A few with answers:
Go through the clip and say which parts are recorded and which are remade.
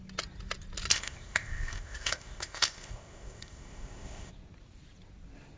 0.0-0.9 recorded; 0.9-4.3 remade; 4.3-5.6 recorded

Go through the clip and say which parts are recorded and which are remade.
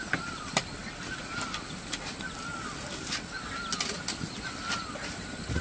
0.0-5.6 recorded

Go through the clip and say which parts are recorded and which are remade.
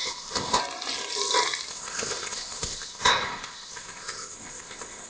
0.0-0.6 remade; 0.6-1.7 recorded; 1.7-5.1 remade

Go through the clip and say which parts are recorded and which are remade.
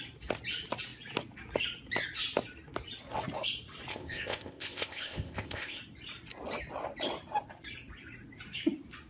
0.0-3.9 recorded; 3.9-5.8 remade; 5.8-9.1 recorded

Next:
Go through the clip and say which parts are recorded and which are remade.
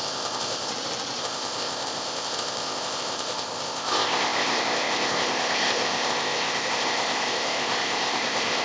0.0-0.7 remade; 0.7-1.2 recorded; 1.2-8.6 remade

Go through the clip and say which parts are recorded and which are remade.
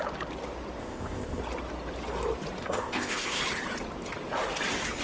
0.0-0.8 recorded; 0.8-1.4 remade; 1.4-2.6 recorded; 2.6-3.4 remade; 3.4-5.0 recorded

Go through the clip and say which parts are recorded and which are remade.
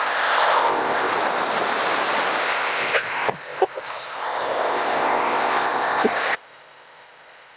0.0-1.1 remade; 1.1-2.4 recorded; 2.4-7.6 remade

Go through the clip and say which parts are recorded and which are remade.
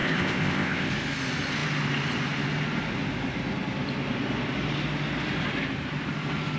0.0-0.9 remade; 0.9-6.6 recorded